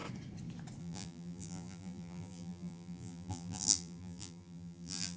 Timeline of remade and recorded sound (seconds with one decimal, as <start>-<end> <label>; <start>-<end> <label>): 0.0-0.8 recorded; 0.8-5.2 remade